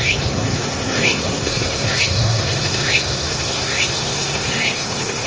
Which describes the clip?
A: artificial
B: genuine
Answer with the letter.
A